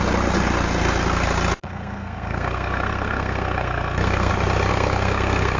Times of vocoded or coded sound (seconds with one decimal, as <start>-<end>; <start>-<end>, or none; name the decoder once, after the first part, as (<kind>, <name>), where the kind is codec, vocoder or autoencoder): 1.6-4.3 (codec, SNAC); 4.7-5.6